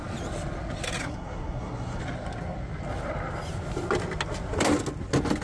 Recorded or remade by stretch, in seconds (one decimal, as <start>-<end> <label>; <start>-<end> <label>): 0.0-1.0 recorded; 1.0-2.0 remade; 2.0-5.4 recorded